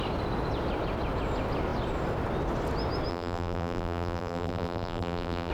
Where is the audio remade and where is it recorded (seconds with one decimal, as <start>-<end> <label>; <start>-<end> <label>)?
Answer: 0.0-3.1 recorded; 3.1-5.5 remade